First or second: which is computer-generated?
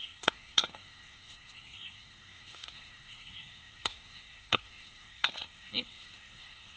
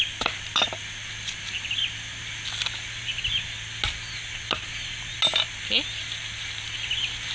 first